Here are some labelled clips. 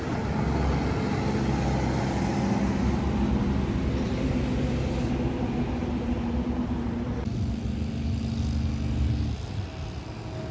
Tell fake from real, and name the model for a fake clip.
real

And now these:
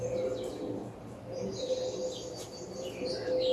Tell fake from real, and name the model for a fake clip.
real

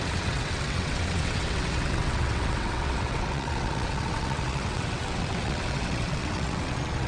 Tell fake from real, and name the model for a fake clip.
fake, vocoder, WaveNeXt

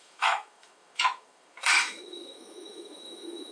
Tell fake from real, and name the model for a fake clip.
fake, autoencoder, DAC-VAE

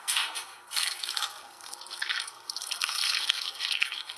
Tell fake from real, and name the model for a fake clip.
fake, codec, SNAC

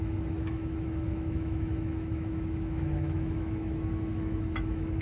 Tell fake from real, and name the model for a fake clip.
fake, autoencoder, DAC-VAE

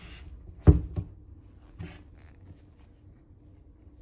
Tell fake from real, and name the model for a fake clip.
real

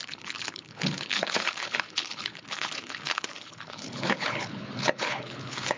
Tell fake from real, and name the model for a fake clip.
fake, codec, HILCodec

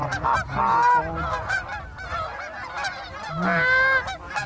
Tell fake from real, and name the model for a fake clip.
real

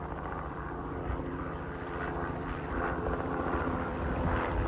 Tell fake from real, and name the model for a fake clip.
fake, vocoder, BigVGAN v2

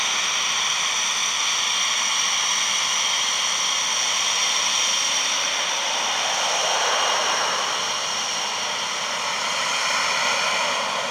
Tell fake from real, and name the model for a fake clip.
real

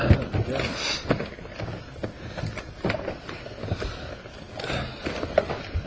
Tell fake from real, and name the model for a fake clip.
real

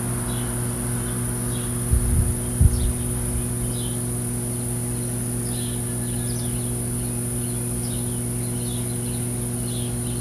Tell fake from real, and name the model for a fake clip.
real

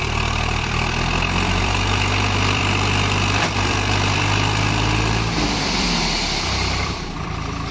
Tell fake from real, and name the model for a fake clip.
fake, vocoder, BigVGAN v2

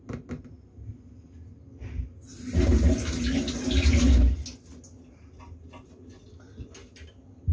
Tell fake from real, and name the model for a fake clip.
real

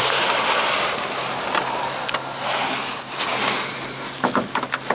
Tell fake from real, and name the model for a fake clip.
real